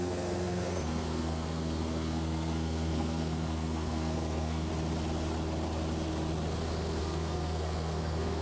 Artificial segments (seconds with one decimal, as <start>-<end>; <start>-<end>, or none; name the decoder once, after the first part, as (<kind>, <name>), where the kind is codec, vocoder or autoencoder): 0.0-4.7 (codec, SNAC); 7.0-8.4

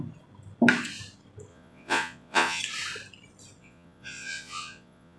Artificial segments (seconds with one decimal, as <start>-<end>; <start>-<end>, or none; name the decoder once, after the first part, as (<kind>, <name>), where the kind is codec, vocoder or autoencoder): 1.5-2.6 (vocoder, Vocos); 3.6-5.2

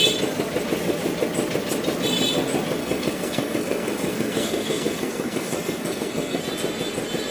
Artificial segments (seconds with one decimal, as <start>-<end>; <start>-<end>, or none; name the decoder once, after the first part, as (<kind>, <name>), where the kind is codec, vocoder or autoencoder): 2.8-6.4 (codec, SNAC)

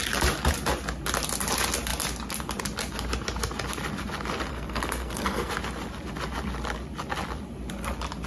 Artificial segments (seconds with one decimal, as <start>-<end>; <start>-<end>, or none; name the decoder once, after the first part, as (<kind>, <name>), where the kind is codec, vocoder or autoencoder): 4.5-5.5 (codec, SNAC)

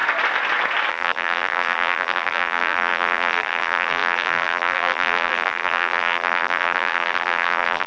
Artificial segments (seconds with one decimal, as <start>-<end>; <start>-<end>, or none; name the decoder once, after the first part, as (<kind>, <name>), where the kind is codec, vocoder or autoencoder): 0.9-7.9 (vocoder, BigVGAN v2)

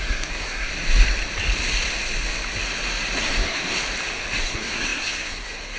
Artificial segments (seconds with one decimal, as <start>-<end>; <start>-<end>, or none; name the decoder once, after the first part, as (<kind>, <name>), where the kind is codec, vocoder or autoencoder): 0.0-0.7 (codec, SNAC); 3.2-3.6; 4.4-5.8

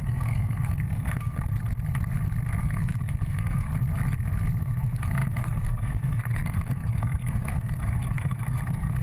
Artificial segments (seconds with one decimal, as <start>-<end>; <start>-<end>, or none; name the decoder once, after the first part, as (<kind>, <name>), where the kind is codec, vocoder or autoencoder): 0.0-1.5 (codec, SNAC); 2.6-3.7; 4.6-9.0